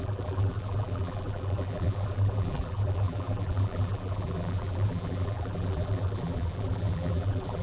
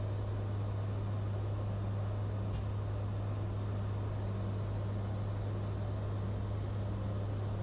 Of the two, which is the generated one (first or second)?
first